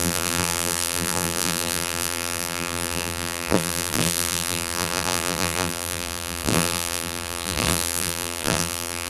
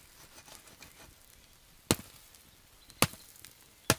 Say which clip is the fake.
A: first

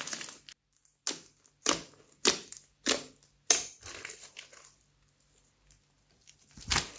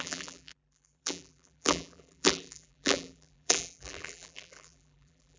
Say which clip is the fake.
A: second